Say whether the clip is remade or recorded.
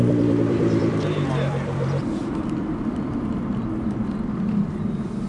remade